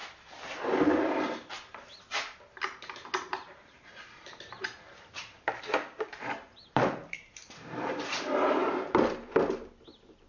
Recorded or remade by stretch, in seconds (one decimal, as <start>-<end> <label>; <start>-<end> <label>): 0.0-3.3 recorded; 3.3-8.0 remade; 8.0-8.6 recorded; 8.6-9.3 remade; 9.3-10.3 recorded